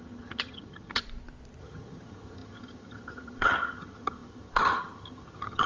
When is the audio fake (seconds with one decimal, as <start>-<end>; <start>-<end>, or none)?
0.0-1.0; 1.6-5.7